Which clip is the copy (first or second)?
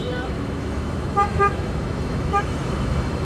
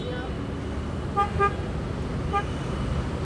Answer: first